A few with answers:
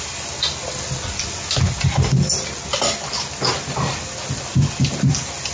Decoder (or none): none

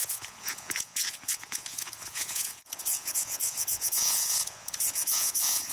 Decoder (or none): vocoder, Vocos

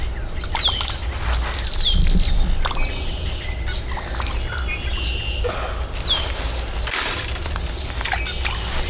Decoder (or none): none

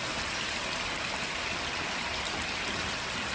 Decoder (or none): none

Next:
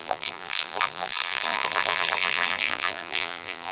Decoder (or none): vocoder, BigVGAN v2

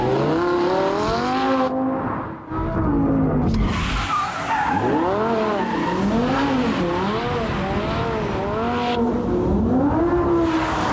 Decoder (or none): none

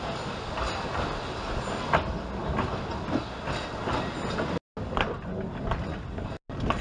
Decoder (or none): none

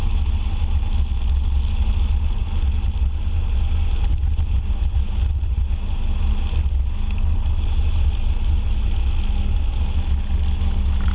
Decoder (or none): none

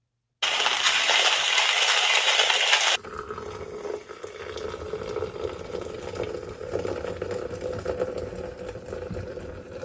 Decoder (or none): none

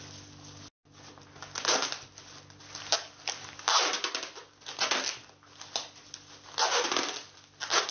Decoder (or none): none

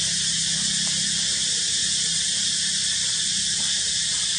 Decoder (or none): none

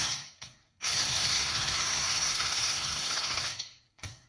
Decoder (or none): codec, SNAC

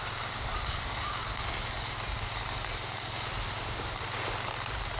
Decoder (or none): none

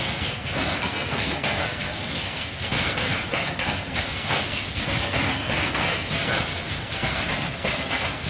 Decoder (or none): codec, SNAC